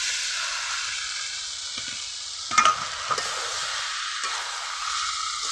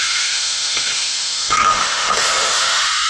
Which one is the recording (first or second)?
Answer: first